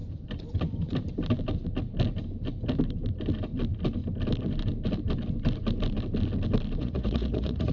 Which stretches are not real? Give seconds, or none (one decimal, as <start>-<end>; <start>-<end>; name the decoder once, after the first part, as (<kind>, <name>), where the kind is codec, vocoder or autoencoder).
6.8-7.7 (vocoder, Vocos)